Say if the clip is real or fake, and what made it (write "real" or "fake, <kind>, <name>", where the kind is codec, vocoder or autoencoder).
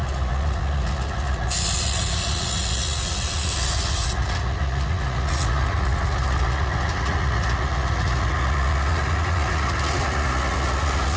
fake, vocoder, Vocos